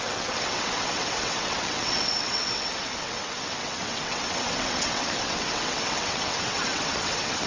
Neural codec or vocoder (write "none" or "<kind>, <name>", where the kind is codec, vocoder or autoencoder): vocoder, WaveNeXt